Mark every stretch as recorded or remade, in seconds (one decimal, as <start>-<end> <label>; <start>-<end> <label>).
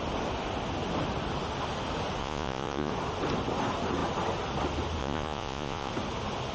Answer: 0.0-2.2 recorded; 2.2-2.9 remade; 2.9-5.0 recorded; 5.0-5.9 remade; 5.9-6.5 recorded